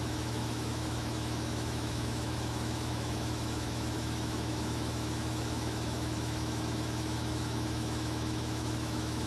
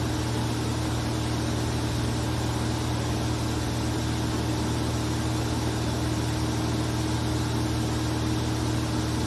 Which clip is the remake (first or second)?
first